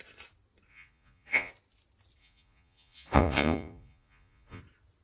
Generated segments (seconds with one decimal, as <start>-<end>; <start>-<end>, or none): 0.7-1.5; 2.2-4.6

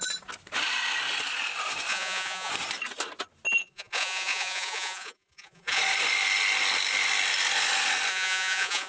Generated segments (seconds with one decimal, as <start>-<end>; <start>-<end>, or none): 1.9-2.5; 3.6-5.8; 8.1-8.9

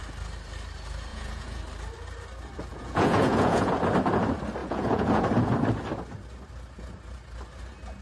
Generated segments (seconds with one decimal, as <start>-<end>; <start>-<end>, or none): 1.1-1.6; 2.7-3.7; 4.6-5.2